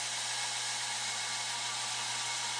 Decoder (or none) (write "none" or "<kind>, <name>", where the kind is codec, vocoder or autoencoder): none